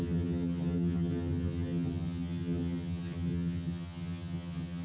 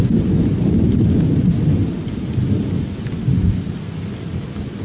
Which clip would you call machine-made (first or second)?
first